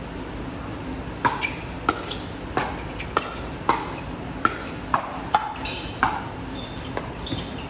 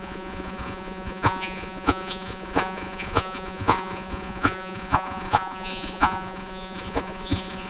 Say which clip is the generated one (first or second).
second